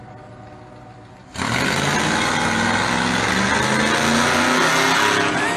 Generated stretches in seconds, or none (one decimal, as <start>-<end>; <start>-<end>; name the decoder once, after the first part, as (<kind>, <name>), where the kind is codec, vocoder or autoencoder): none